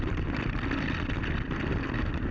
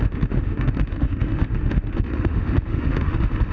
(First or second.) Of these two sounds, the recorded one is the first